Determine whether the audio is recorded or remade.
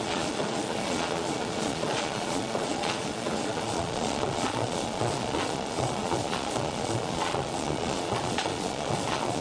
remade